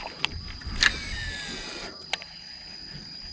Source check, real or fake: real